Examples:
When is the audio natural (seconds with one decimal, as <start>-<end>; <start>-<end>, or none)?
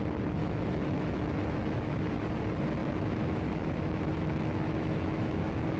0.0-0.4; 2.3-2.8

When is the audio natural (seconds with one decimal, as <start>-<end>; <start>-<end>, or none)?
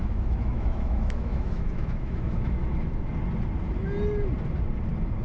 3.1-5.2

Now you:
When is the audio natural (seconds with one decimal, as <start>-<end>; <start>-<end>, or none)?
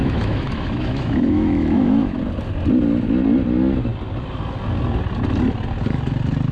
2.2-6.5